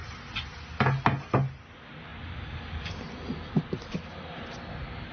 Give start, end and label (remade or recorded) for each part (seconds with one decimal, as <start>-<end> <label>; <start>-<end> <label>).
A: 0.0-5.1 recorded